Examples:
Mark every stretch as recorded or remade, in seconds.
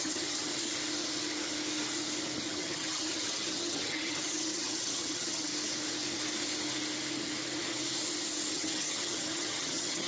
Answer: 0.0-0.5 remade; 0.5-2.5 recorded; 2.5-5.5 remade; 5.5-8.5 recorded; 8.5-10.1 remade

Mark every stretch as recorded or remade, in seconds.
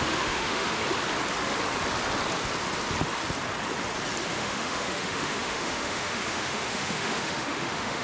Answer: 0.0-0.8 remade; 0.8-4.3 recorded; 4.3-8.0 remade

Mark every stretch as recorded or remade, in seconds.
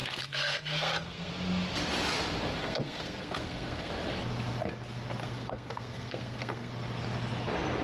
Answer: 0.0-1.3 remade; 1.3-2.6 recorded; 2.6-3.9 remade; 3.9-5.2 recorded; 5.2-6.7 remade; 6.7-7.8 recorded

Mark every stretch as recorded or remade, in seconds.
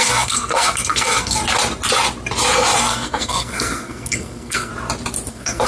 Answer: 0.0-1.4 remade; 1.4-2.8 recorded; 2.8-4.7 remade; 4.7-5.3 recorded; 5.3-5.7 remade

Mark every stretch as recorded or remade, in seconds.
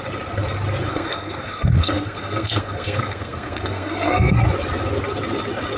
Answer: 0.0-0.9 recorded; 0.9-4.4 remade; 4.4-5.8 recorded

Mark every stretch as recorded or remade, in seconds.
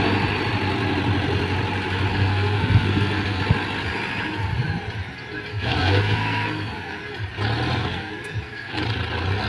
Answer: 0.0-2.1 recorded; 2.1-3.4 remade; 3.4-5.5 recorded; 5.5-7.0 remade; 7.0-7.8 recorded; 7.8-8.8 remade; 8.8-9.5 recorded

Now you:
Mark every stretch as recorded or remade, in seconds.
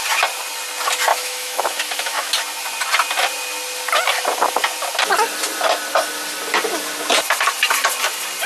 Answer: 0.0-1.1 recorded; 1.1-2.3 remade; 2.3-8.5 recorded